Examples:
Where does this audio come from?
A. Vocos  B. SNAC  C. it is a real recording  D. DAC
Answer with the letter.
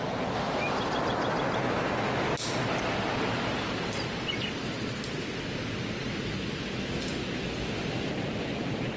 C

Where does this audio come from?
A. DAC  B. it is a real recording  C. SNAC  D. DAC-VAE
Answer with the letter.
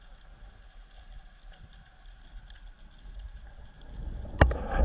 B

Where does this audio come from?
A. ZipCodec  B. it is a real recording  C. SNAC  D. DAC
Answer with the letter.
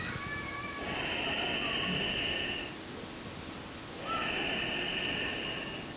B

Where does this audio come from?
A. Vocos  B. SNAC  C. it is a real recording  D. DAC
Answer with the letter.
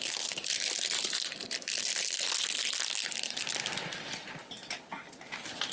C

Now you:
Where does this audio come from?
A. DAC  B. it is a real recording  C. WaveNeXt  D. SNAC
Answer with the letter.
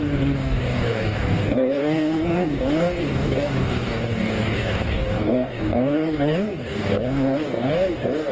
A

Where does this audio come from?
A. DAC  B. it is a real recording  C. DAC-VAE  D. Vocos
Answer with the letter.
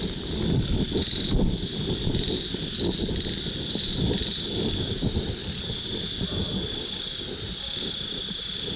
B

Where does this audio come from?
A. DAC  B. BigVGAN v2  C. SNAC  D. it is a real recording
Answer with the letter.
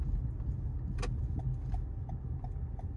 D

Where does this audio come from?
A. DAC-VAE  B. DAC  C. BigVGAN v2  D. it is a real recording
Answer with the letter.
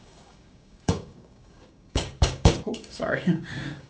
B